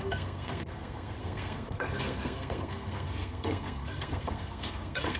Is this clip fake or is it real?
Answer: fake